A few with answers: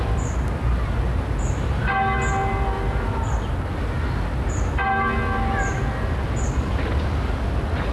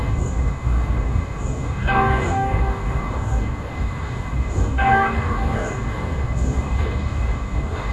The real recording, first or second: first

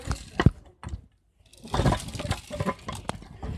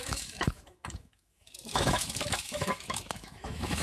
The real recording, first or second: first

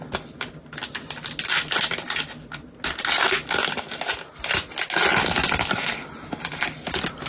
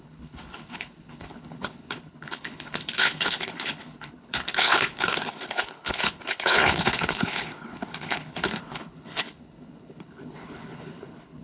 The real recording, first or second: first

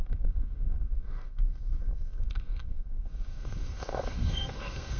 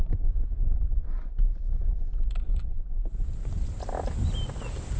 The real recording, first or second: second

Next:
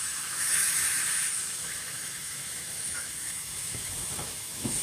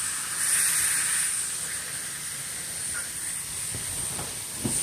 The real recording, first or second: second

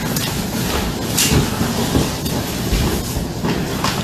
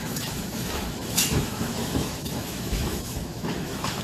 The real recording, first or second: first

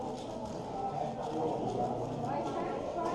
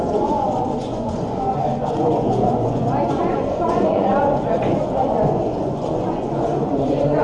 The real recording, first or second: first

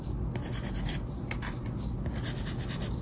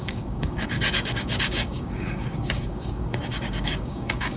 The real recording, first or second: first